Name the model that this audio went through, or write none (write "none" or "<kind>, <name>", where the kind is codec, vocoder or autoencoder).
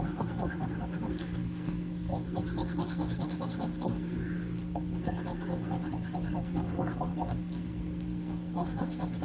codec, SNAC